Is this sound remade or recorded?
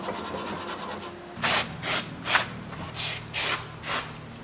recorded